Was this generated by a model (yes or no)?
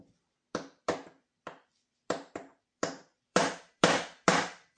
yes